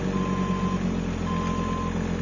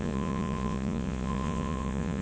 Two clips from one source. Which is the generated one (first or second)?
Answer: second